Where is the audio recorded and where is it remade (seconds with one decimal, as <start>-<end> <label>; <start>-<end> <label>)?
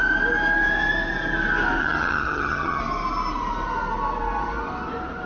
0.0-1.8 recorded; 1.8-2.8 remade; 2.8-5.3 recorded